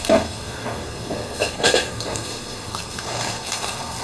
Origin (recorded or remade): remade